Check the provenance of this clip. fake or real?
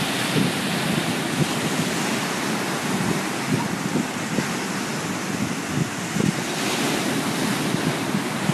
real